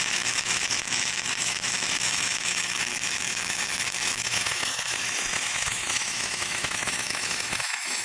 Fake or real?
fake